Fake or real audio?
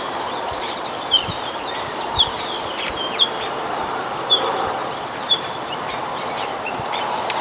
fake